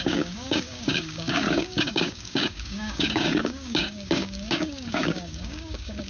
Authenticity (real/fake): fake